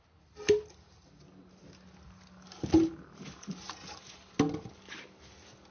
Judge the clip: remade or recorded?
recorded